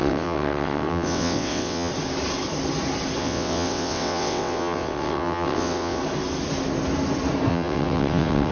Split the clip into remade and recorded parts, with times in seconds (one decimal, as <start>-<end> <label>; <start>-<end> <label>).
0.0-1.9 remade; 1.9-3.2 recorded; 3.2-6.0 remade; 6.0-7.5 recorded; 7.5-8.5 remade